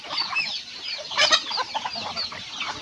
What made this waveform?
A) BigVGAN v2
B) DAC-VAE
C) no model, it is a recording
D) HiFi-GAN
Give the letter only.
C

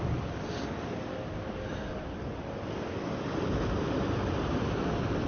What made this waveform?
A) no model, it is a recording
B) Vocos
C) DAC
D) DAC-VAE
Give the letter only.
A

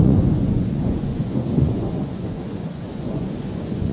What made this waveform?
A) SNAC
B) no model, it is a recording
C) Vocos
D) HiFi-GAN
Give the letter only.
C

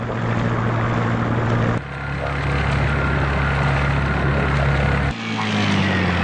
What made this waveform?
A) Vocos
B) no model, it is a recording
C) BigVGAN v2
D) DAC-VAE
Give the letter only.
B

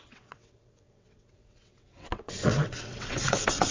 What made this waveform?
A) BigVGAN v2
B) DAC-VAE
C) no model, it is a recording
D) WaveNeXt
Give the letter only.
D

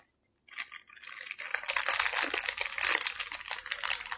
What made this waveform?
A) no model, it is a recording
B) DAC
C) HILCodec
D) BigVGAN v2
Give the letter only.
A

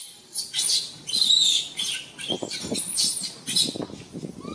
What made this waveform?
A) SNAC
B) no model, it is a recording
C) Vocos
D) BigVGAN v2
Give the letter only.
B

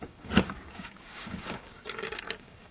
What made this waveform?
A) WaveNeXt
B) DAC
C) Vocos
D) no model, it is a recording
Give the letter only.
B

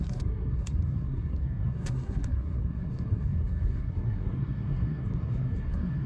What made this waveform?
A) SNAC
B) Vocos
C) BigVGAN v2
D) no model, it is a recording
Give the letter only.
A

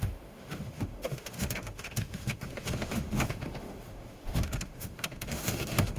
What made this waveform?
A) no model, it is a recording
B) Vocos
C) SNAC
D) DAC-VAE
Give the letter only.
D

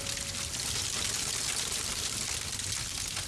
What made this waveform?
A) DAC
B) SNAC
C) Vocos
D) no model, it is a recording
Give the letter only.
D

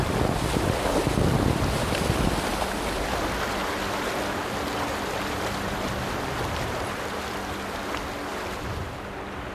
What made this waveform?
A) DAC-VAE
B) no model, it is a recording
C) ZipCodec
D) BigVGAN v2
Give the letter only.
B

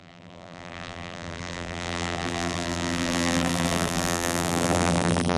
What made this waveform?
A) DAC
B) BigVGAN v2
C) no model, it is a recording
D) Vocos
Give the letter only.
B